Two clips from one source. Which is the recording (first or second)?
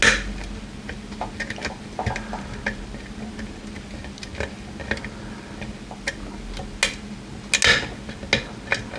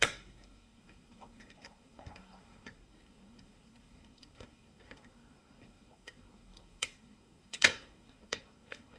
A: first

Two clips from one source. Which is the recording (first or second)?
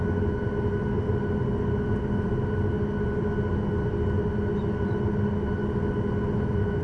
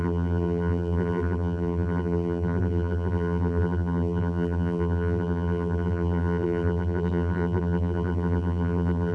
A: first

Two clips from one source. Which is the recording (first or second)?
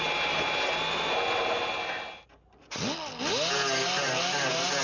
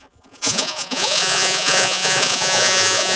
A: first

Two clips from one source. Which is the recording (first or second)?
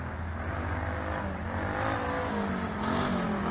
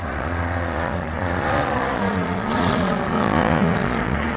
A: first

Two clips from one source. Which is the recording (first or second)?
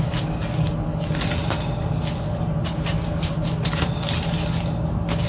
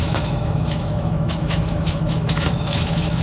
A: first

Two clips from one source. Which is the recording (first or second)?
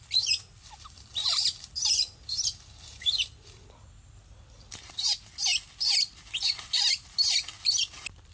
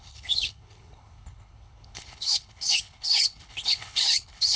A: first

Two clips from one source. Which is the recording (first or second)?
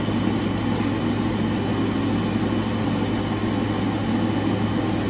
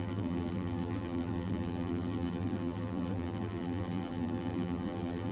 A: first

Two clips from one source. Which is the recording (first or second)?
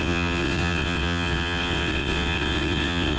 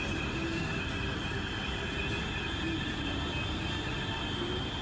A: second